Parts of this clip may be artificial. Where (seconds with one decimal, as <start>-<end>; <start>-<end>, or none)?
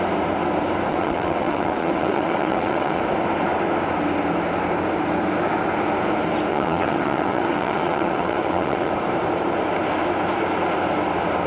0.9-3.0; 6.5-8.9